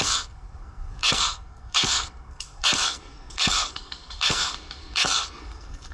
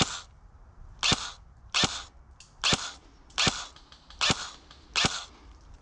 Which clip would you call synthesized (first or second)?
first